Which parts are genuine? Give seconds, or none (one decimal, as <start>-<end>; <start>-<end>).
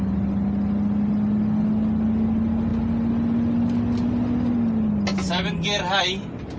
0.0-6.6